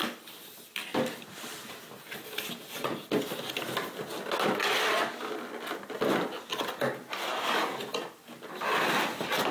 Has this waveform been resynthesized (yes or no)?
no